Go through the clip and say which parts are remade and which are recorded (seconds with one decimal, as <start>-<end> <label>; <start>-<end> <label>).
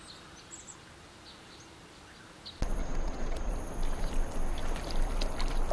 0.0-2.8 recorded; 2.8-3.5 remade; 3.5-5.7 recorded